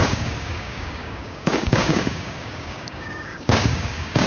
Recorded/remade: remade